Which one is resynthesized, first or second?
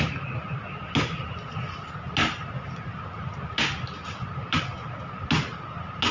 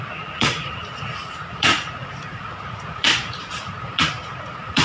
second